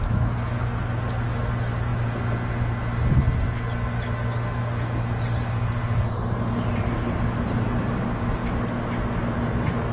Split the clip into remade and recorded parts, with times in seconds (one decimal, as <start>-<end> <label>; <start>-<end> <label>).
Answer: 0.0-9.9 recorded